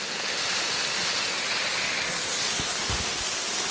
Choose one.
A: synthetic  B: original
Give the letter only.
B